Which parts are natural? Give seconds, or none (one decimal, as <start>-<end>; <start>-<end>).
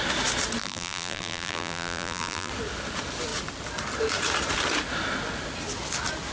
0.0-0.6; 2.5-6.3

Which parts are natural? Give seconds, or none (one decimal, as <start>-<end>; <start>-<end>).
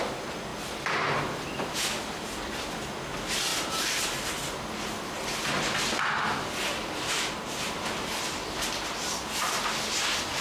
0.0-3.5; 4.0-10.4